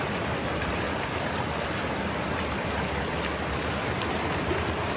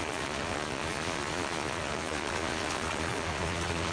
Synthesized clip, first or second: second